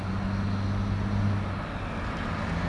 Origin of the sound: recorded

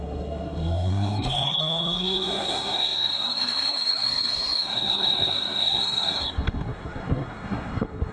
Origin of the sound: remade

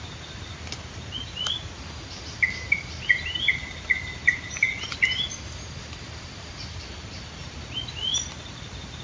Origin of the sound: recorded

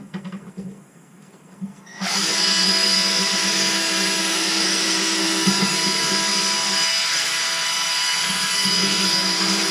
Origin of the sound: remade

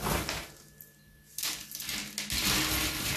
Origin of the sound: recorded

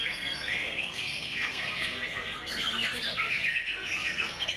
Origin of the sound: remade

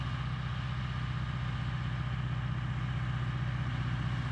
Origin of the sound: recorded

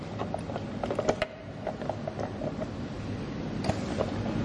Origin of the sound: recorded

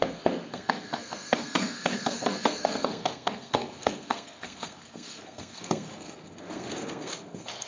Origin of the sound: remade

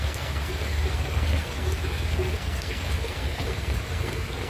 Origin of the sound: remade